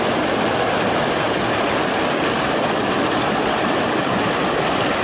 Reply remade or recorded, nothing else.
recorded